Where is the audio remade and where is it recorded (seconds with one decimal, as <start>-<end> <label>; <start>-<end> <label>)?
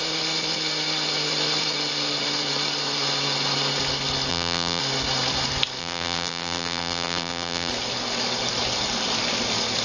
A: 0.0-4.3 recorded; 4.3-4.8 remade; 4.8-5.8 recorded; 5.8-7.7 remade; 7.7-9.8 recorded